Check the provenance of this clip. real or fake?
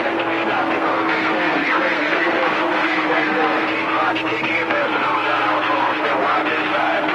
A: fake